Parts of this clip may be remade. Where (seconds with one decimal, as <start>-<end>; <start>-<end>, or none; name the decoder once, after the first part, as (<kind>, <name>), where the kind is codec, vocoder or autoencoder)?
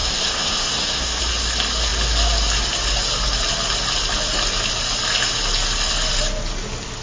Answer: 0.0-1.2 (codec, SNAC)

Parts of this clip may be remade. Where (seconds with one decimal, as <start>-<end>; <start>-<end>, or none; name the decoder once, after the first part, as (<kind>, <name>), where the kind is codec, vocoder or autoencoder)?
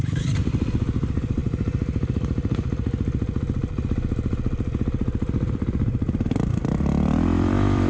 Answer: 0.0-1.4 (vocoder, BigVGAN v2); 5.5-7.9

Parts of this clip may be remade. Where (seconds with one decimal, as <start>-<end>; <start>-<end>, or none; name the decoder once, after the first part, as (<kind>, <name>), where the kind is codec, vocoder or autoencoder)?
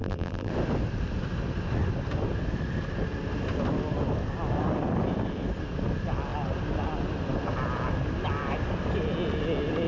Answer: 0.0-0.5 (vocoder, BigVGAN v2)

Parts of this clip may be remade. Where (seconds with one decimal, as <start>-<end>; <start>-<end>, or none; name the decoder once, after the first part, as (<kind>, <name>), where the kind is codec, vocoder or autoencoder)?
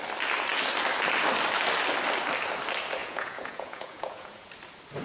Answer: 3.0-4.5 (vocoder, Vocos)